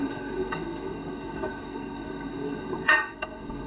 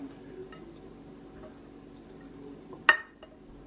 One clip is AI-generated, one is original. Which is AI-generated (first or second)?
first